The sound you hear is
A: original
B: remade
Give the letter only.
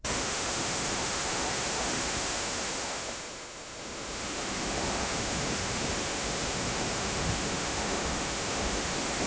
B